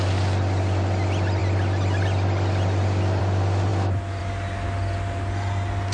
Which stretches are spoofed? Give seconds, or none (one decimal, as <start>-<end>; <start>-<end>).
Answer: none